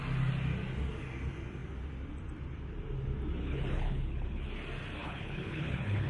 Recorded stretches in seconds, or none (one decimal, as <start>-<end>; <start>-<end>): 0.0-3.4; 4.5-5.0